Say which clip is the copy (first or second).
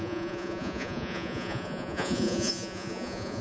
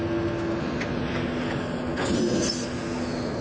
first